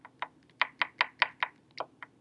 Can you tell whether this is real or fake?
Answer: real